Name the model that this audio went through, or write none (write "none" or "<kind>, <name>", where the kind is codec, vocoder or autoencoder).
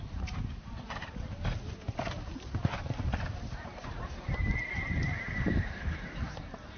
vocoder, BigVGAN v2